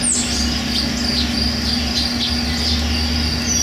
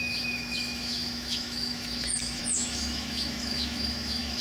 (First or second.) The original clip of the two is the first